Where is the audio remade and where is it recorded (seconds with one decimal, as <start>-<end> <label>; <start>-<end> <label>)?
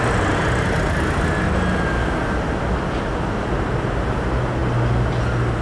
0.0-5.6 recorded